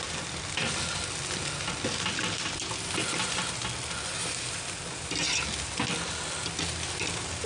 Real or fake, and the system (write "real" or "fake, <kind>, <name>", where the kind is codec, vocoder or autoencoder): real